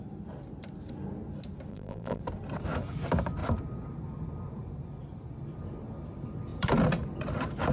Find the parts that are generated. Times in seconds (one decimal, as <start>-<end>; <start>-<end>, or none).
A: 1.7-2.2